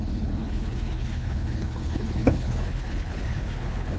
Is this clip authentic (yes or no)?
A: no